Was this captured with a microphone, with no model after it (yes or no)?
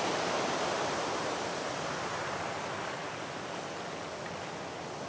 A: yes